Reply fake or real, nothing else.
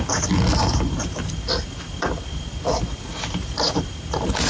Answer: real